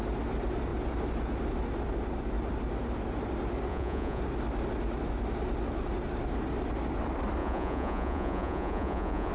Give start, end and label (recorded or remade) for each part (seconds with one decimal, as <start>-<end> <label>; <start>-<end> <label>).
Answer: 0.0-3.7 recorded; 3.7-4.2 remade; 4.2-7.4 recorded; 7.4-9.3 remade